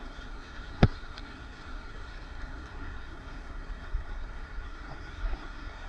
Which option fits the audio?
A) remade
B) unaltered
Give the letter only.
A